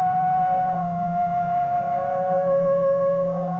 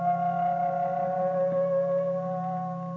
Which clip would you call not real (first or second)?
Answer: first